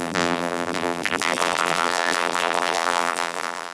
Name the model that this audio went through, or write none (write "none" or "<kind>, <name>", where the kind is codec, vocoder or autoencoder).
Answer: vocoder, BigVGAN v2